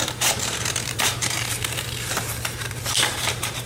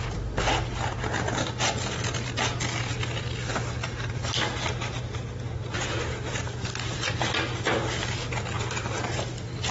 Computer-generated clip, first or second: first